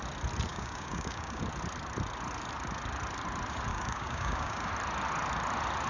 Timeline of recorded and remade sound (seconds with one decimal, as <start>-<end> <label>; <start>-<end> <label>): 0.0-0.5 recorded; 0.5-1.4 remade; 1.4-3.7 recorded; 3.7-4.7 remade; 4.7-5.9 recorded